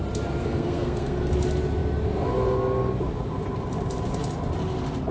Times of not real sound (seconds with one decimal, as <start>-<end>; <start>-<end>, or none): 0.4-1.3